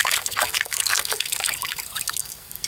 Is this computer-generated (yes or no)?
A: yes